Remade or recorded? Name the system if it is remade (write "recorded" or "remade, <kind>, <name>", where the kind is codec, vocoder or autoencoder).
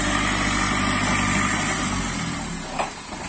recorded